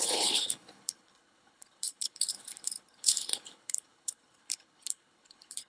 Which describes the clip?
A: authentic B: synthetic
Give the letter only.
B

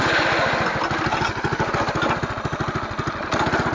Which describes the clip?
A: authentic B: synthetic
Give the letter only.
A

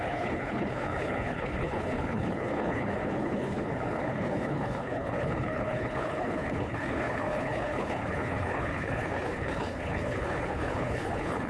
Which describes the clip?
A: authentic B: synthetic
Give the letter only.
B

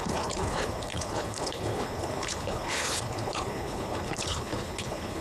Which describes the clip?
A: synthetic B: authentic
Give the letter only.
A